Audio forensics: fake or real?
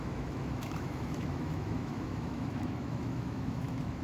fake